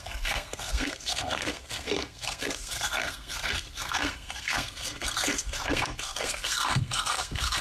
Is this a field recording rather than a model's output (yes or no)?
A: no